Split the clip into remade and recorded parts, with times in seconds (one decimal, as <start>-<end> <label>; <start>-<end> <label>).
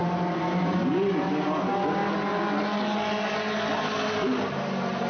0.0-5.1 recorded